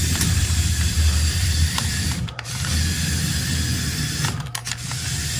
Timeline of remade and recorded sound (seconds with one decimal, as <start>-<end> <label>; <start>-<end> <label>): 0.0-3.2 remade; 3.2-4.6 recorded; 4.6-5.4 remade